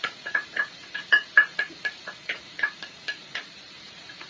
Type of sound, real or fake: fake